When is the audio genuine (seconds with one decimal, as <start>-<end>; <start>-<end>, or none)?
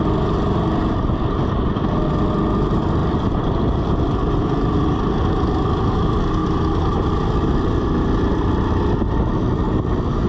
0.0-3.0; 5.1-10.3